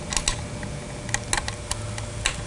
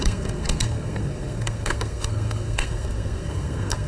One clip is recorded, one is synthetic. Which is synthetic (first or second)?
second